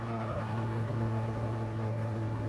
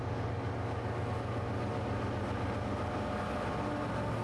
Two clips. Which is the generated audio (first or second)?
first